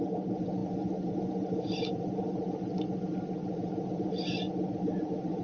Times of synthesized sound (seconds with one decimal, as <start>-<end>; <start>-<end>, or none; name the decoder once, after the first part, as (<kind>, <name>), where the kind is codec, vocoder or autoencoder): none